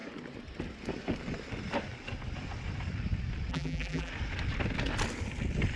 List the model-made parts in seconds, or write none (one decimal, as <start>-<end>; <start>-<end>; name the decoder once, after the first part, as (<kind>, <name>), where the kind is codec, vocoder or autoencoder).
3.5-4.1 (vocoder, BigVGAN v2)